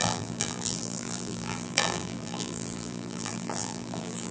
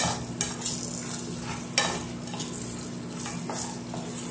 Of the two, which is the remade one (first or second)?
first